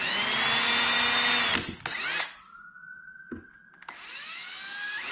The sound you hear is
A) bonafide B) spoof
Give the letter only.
A